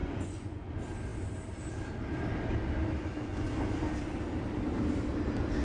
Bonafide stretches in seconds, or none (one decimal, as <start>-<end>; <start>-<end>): 0.7-3.0; 3.5-5.6

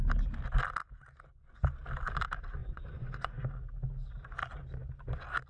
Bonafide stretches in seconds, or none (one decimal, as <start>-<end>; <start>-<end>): 0.0-2.6; 3.4-5.5

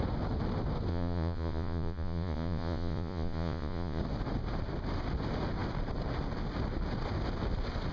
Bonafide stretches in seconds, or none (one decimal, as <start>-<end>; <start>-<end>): 0.0-0.9; 4.0-7.9

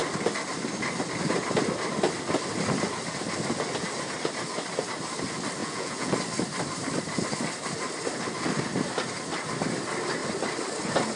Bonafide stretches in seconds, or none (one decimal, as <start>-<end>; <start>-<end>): 0.0-5.6; 6.1-11.2

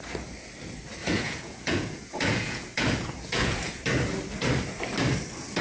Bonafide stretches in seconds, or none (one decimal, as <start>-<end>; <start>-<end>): 0.0-1.0; 3.7-5.6

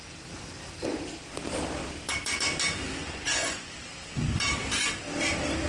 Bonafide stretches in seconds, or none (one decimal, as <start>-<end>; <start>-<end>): 0.0-3.0; 3.7-5.7

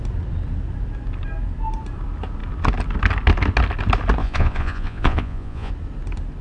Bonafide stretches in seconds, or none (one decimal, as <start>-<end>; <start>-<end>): 0.0-4.2; 5.7-6.4

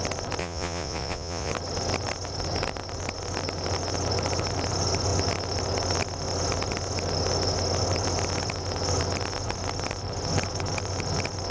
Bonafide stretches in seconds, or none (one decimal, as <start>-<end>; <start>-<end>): 0.0-0.4; 1.5-11.5